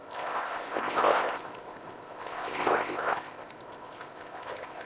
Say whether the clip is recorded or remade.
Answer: remade